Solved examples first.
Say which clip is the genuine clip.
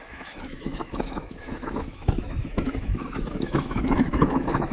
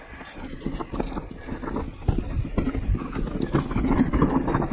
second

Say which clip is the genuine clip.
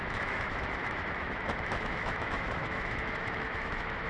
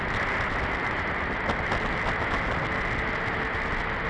second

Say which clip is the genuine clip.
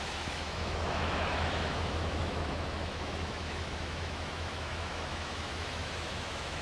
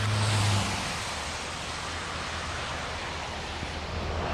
second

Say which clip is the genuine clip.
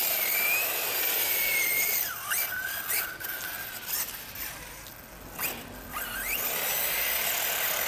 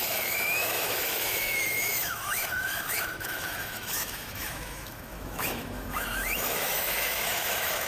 first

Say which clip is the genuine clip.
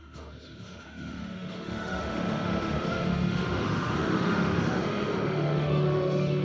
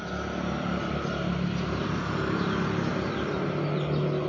second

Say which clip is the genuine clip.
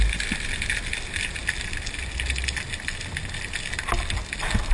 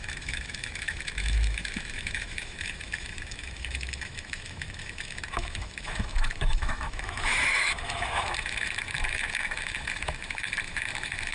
first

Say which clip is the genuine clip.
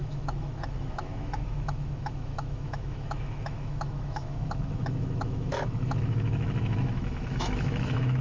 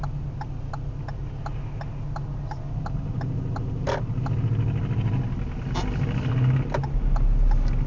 second